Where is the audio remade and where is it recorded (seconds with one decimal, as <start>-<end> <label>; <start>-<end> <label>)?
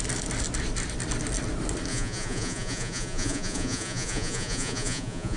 0.0-1.9 recorded; 1.9-5.4 remade